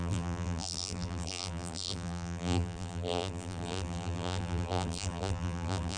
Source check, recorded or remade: remade